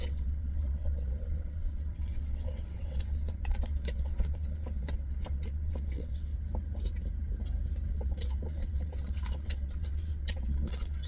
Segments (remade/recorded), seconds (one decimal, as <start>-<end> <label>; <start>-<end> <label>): 0.0-6.3 remade; 6.3-7.9 recorded; 7.9-11.1 remade